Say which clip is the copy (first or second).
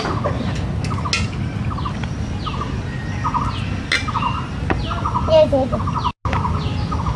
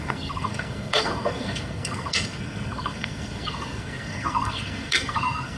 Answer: second